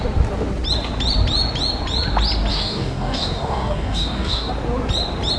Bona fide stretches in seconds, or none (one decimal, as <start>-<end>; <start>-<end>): 0.0-2.5; 4.5-5.4